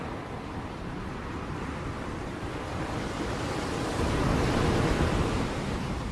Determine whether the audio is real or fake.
fake